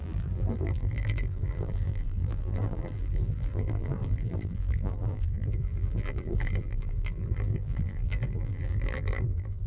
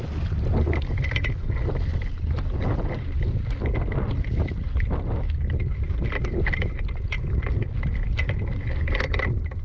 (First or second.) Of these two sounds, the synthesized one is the first